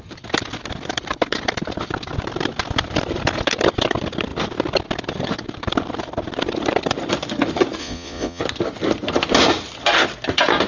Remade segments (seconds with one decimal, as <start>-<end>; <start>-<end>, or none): 7.8-8.4